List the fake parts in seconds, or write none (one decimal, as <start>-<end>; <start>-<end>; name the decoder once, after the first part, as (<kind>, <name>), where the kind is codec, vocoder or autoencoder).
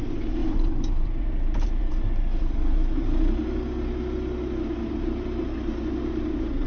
0.4-3.6 (vocoder, BigVGAN v2); 4.8-5.5